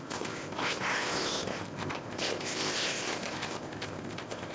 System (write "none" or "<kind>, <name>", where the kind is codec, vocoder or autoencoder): codec, ZipCodec